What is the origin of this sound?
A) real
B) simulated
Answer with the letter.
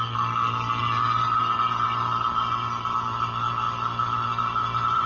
A